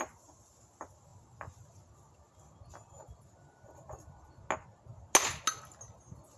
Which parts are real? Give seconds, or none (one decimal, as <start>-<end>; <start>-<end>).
0.0-6.4

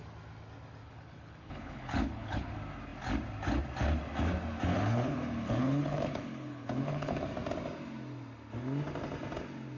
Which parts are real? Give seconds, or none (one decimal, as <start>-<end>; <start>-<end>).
0.0-0.8; 2.5-4.7; 7.3-9.8

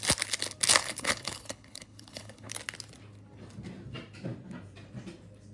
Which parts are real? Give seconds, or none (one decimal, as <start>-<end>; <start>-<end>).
0.0-0.8; 2.5-5.5